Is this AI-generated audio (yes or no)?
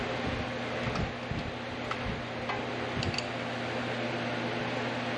no